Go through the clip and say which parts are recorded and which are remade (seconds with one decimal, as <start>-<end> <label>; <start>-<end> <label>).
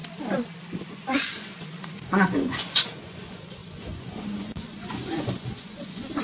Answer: 0.0-0.9 recorded; 0.9-6.2 remade